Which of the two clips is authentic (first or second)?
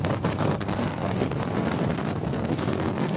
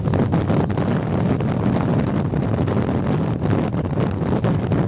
second